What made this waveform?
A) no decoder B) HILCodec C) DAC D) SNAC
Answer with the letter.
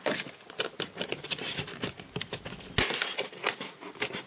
A